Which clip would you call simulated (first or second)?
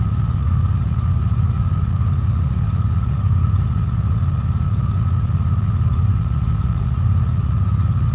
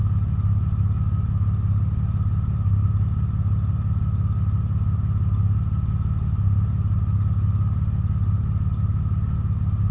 first